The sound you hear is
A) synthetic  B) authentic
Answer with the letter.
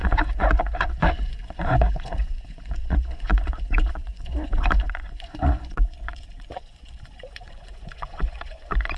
A